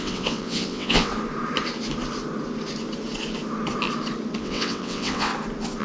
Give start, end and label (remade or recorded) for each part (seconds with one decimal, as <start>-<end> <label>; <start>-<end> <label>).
0.0-1.1 remade; 1.1-4.4 recorded; 4.4-5.3 remade; 5.3-5.8 recorded